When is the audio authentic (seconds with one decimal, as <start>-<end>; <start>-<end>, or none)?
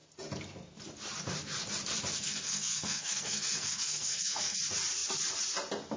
0.0-2.1; 4.6-6.0